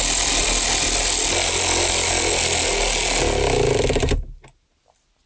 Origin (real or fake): real